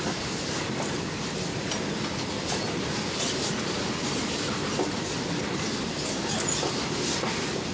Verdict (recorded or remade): recorded